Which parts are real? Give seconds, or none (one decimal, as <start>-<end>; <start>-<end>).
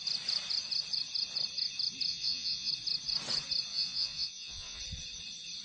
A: 0.0-2.1; 2.7-3.7; 4.8-5.6